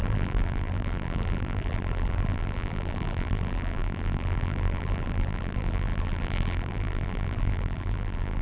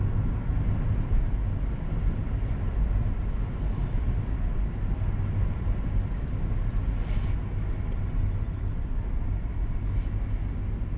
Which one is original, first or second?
second